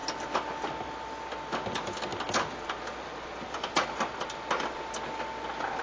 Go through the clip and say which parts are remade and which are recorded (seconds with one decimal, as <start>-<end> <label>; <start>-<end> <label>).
0.0-5.8 recorded